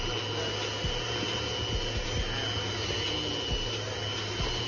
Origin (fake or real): real